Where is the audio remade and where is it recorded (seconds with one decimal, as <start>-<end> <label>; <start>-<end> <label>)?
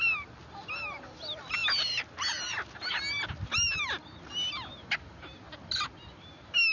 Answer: 0.0-6.7 recorded